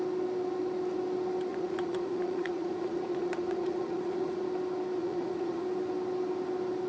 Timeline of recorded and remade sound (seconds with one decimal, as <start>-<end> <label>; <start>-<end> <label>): 0.0-1.5 recorded; 1.5-4.4 remade; 4.4-5.0 recorded; 5.0-5.6 remade; 5.6-6.9 recorded

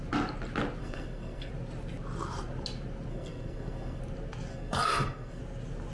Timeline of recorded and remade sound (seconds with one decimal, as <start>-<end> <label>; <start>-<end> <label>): 0.0-0.8 recorded; 0.8-1.5 remade; 1.5-3.1 recorded; 3.1-4.0 remade; 4.0-4.5 recorded; 4.5-5.4 remade; 5.4-5.9 recorded

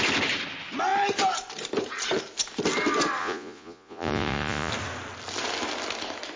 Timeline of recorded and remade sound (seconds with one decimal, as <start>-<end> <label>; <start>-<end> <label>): 0.0-3.2 recorded; 3.2-4.7 remade; 4.7-6.4 recorded

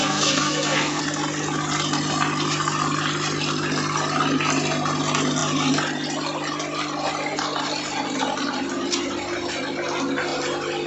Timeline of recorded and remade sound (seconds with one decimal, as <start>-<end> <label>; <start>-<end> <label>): 0.0-1.0 remade; 1.0-10.9 recorded